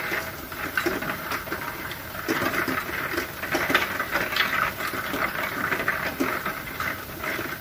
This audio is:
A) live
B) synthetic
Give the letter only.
A